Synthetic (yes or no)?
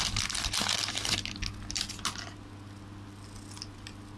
no